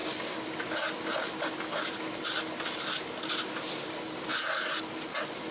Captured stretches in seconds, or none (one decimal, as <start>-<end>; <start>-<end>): 0.0-5.5